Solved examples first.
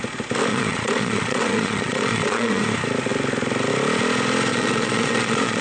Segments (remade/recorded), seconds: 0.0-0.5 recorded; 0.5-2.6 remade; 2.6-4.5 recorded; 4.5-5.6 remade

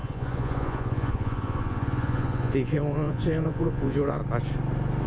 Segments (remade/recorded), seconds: 0.0-4.2 remade; 4.2-5.1 recorded

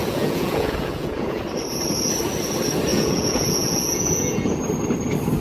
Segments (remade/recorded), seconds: 0.0-1.4 remade; 1.4-2.9 recorded; 2.9-4.6 remade; 4.6-5.4 recorded